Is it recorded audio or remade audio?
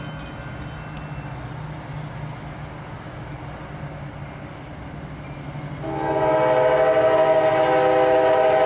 recorded